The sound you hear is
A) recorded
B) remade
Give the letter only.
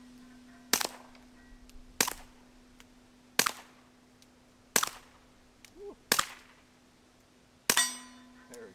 A